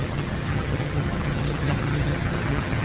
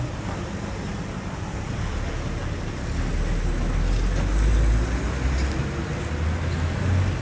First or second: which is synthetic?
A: first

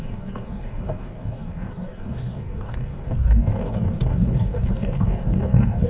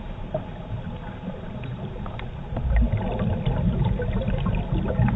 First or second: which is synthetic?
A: first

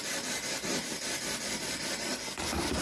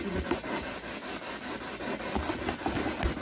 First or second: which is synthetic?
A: first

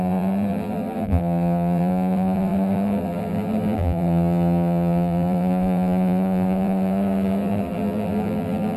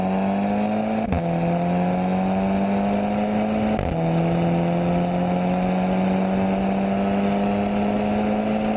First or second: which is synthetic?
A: first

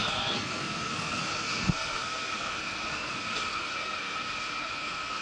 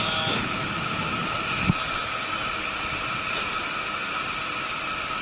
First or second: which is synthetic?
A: first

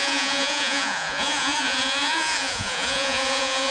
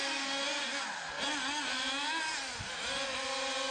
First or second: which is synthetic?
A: first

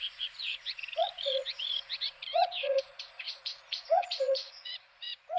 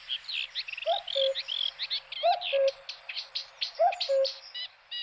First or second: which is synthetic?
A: first